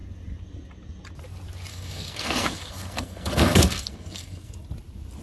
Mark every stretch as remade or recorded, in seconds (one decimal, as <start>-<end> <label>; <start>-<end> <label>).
0.0-1.7 recorded; 1.7-4.5 remade; 4.5-5.2 recorded